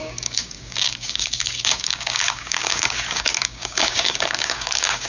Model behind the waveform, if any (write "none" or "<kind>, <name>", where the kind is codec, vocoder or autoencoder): codec, DAC